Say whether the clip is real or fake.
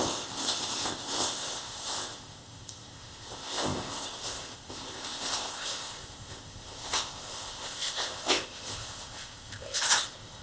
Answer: fake